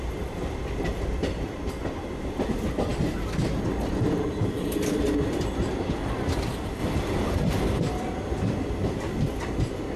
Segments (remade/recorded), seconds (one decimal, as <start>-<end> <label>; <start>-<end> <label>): 0.0-6.8 recorded; 6.8-7.8 remade; 7.8-10.0 recorded